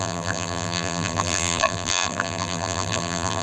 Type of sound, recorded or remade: remade